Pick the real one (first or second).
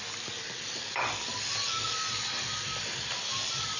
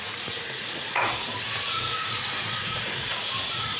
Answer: first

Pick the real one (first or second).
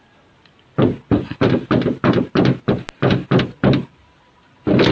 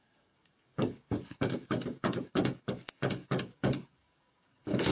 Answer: first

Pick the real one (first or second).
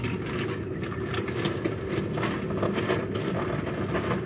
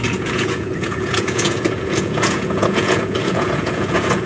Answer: first